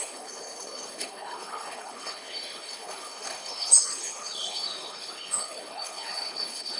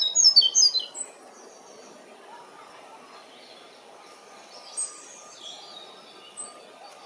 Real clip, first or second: second